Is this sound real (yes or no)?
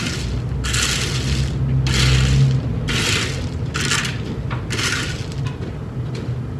yes